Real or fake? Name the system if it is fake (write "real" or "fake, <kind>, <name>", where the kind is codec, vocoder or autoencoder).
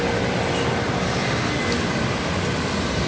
real